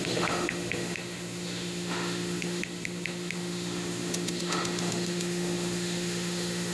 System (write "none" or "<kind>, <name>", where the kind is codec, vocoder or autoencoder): autoencoder, DAC-VAE